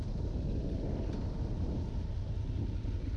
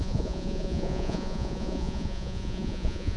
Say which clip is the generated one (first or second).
second